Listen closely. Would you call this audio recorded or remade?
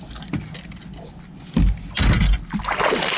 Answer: recorded